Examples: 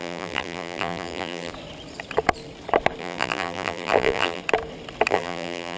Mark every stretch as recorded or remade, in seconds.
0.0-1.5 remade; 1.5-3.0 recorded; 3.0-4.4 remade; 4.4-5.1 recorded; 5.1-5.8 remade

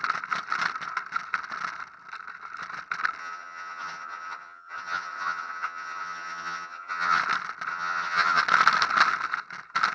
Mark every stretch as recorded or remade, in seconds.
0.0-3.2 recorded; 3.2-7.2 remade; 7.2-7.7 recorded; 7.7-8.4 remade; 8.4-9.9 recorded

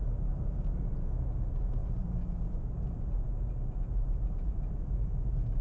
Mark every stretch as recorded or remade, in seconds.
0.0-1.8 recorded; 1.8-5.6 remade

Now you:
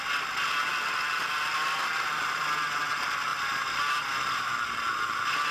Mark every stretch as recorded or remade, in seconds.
0.0-5.5 recorded